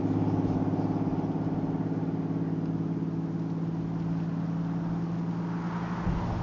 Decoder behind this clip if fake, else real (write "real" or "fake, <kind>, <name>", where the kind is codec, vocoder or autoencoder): real